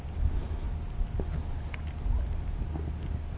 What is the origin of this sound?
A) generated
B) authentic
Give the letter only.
B